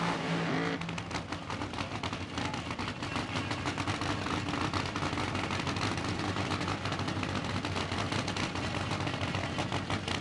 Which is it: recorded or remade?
recorded